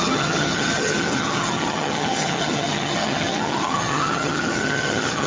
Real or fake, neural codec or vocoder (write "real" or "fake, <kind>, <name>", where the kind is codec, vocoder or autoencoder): fake, vocoder, HiFi-GAN